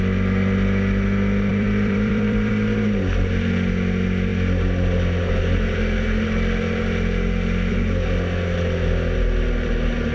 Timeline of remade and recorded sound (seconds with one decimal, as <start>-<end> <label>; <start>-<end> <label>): 0.0-1.5 recorded; 1.5-2.5 remade; 2.5-10.1 recorded